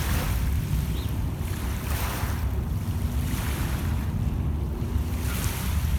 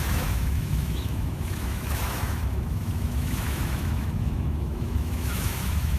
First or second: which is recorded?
first